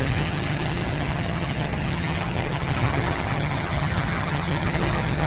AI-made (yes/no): yes